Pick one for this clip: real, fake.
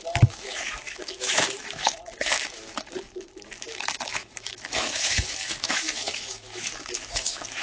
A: fake